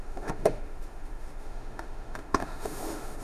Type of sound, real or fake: fake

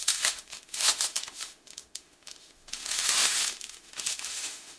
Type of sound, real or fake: fake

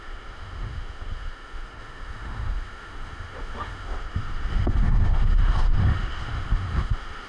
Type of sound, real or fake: fake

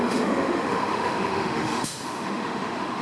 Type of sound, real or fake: fake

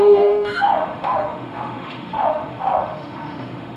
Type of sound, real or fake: fake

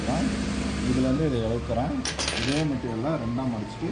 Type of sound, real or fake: real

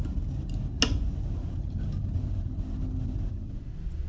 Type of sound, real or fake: real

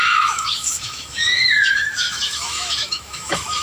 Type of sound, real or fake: fake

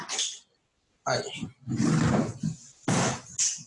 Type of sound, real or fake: real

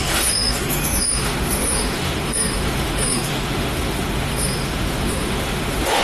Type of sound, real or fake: fake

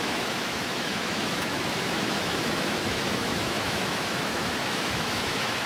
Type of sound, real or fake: fake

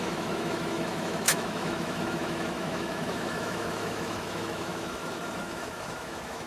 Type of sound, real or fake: fake